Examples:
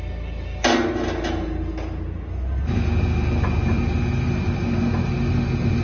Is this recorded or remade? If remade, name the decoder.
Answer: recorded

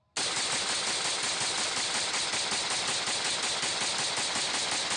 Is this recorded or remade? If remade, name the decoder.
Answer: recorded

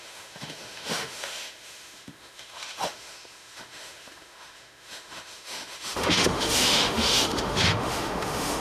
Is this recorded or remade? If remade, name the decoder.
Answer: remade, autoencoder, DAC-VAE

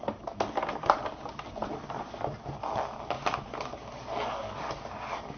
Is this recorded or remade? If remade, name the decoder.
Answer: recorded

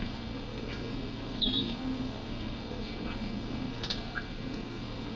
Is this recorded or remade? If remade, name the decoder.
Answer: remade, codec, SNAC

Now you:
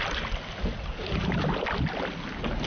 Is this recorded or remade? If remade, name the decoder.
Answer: recorded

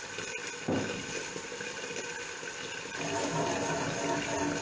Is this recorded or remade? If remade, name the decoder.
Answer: recorded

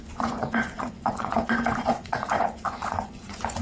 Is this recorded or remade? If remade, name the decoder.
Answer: remade, vocoder, Vocos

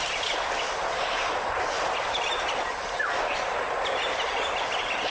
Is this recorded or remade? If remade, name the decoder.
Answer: remade, vocoder, BigVGAN v2